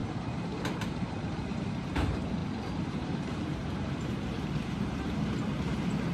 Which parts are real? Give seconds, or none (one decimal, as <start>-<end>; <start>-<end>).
2.4-3.0